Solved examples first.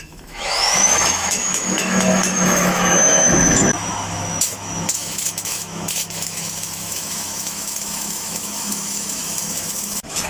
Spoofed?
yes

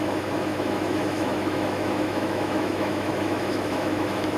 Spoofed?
yes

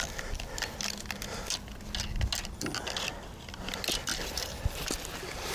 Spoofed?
no